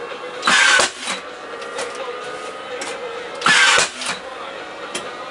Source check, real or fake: real